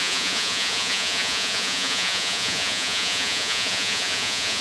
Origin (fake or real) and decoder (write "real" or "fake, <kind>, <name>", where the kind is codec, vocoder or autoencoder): fake, vocoder, Vocos